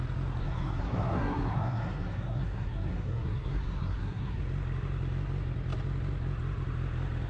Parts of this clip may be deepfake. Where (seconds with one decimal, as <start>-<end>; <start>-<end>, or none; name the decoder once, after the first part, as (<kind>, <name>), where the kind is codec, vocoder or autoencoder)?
0.4-4.4 (codec, SNAC)